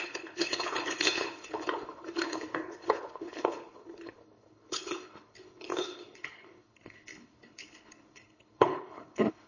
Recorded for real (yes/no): no